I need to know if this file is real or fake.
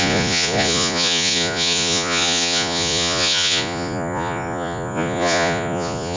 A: fake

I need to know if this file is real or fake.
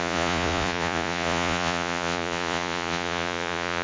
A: fake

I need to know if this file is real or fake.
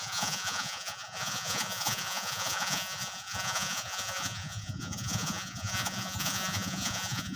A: fake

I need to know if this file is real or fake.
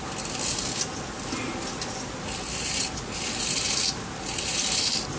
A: real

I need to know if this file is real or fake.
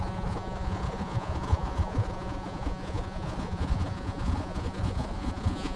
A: fake